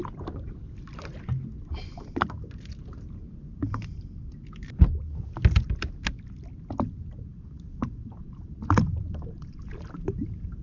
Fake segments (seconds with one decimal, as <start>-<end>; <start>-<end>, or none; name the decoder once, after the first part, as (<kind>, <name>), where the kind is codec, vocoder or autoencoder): 7.3-10.6 (vocoder, BigVGAN v2)